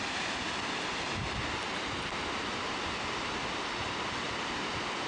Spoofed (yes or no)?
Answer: no